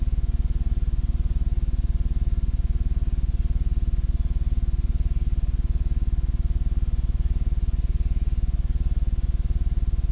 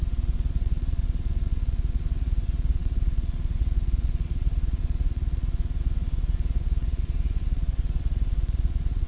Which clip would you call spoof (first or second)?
second